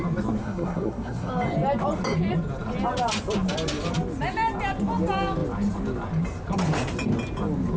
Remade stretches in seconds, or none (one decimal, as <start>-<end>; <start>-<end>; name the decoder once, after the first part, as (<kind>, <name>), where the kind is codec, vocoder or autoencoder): 0.4-1.3 (codec, SNAC)